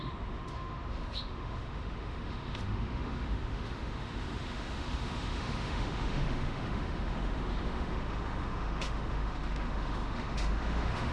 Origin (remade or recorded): remade